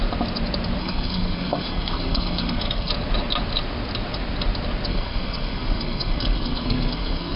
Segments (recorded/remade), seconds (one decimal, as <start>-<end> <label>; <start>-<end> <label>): 0.0-0.8 recorded; 0.8-2.9 remade; 2.9-4.9 recorded; 4.9-7.4 remade